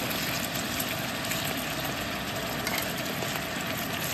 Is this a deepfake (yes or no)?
no